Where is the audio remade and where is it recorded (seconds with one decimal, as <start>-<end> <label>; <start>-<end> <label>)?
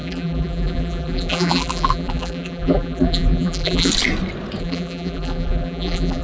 0.0-3.9 remade; 3.9-4.6 recorded; 4.6-6.2 remade